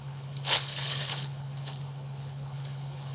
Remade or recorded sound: remade